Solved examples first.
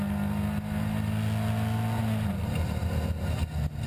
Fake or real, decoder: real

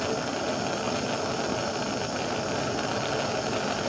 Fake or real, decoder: real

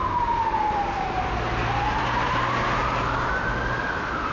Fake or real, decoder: real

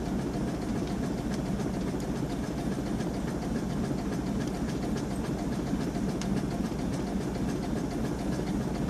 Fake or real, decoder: real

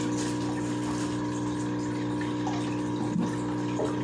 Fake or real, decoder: real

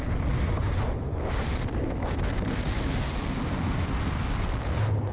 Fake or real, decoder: real